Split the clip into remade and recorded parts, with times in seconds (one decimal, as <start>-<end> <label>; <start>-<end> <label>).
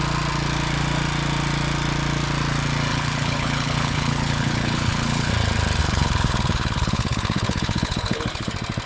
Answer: 0.0-2.9 recorded; 2.9-5.3 remade; 5.3-5.8 recorded; 5.8-8.5 remade; 8.5-8.9 recorded